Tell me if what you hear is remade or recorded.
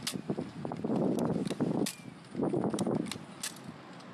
recorded